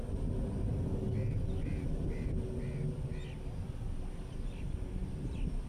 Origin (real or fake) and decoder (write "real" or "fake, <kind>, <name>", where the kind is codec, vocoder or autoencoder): real